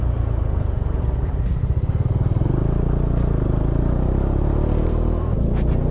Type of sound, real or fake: real